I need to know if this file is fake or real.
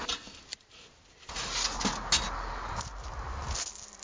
real